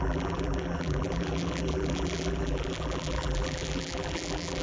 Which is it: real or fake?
fake